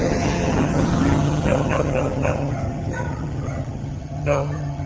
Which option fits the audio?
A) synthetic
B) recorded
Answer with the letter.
A